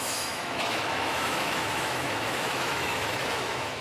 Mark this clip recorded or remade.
remade